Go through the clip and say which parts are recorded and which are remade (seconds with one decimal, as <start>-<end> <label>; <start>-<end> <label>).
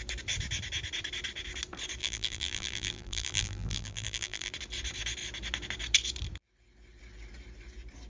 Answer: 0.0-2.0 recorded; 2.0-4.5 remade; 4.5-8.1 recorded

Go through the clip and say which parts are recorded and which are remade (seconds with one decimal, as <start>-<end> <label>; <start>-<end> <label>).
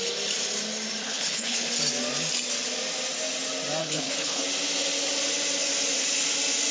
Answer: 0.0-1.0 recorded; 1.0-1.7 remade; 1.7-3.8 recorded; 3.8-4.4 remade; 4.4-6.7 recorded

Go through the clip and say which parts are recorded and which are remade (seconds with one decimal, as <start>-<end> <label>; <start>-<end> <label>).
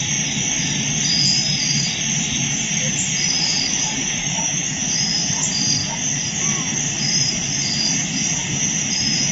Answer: 0.0-4.2 recorded; 4.2-4.8 remade; 4.8-9.3 recorded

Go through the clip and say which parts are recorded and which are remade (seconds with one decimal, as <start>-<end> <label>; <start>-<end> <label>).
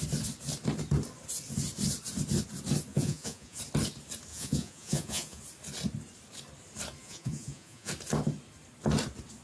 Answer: 0.0-2.9 recorded; 2.9-3.6 remade; 3.6-4.3 recorded; 4.3-5.4 remade; 5.4-7.0 recorded; 7.0-7.9 remade; 7.9-9.4 recorded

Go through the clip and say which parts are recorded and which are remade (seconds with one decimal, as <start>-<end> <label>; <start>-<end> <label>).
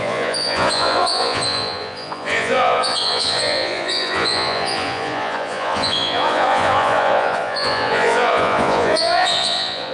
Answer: 0.0-9.9 remade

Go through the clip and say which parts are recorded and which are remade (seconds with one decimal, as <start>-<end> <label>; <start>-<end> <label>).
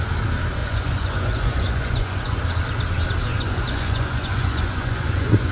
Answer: 0.0-0.6 recorded; 0.6-2.4 remade; 2.4-3.3 recorded; 3.3-5.5 remade